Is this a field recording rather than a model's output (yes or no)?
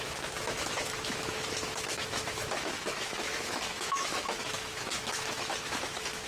no